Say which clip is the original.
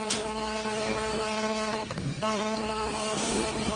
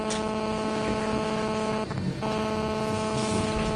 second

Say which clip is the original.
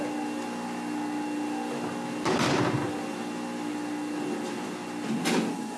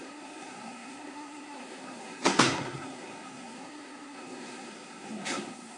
first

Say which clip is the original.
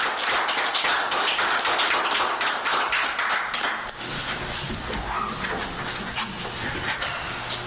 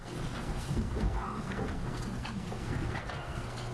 first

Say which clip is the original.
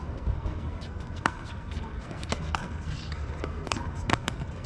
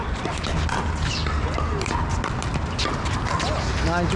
second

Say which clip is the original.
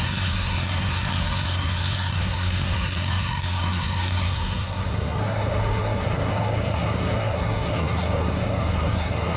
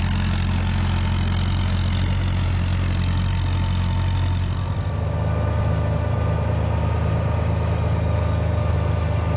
second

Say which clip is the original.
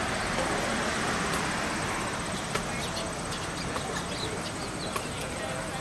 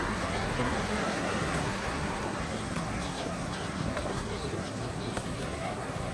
first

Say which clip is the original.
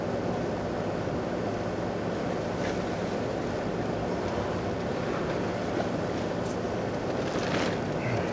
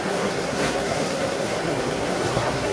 first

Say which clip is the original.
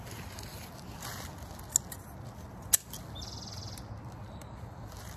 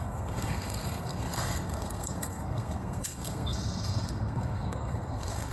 first